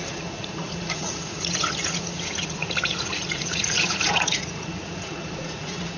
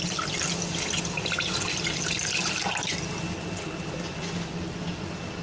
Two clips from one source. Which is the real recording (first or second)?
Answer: second